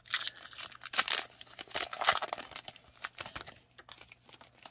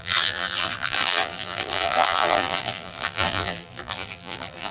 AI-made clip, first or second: second